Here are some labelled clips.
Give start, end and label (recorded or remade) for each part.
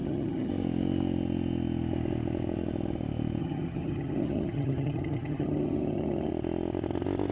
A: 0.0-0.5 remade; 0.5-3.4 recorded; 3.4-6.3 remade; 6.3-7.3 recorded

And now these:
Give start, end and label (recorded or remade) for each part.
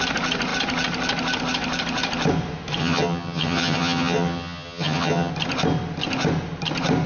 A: 0.0-2.8 recorded; 2.8-5.3 remade; 5.3-7.1 recorded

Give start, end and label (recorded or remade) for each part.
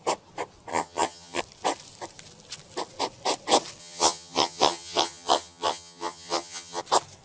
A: 0.0-0.7 recorded; 0.7-1.4 remade; 1.4-3.8 recorded; 3.8-6.8 remade; 6.8-7.2 recorded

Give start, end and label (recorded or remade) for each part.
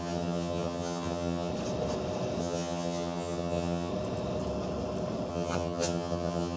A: 0.0-1.5 remade; 1.5-2.4 recorded; 2.4-3.9 remade; 3.9-5.3 recorded; 5.3-6.6 remade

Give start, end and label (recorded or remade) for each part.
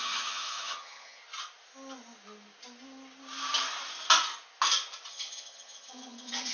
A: 0.0-1.2 remade; 1.2-5.1 recorded; 5.1-6.5 remade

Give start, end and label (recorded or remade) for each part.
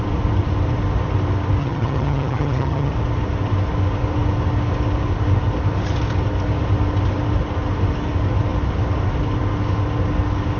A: 0.0-1.6 recorded; 1.6-2.9 remade; 2.9-10.6 recorded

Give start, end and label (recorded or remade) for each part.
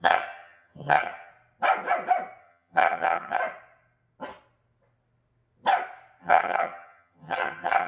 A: 0.0-1.3 remade; 1.3-2.4 recorded; 2.4-3.4 remade; 3.4-6.2 recorded; 6.2-7.9 remade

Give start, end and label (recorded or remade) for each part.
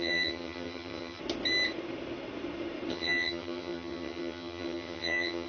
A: 0.0-1.2 remade; 1.2-2.9 recorded; 2.9-5.5 remade